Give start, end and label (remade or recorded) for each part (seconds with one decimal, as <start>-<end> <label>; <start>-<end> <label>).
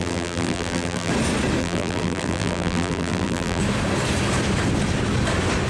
0.0-1.1 remade; 1.1-1.6 recorded; 1.6-3.6 remade; 3.6-5.7 recorded